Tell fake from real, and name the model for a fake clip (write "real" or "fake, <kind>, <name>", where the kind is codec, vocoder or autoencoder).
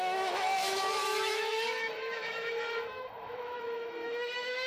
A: fake, autoencoder, DAC-VAE